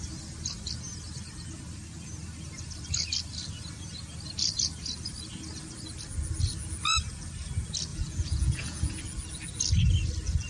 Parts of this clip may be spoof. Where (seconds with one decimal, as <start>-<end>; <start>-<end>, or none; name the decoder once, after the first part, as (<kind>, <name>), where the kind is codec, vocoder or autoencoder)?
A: 7.9-8.8 (vocoder, Vocos)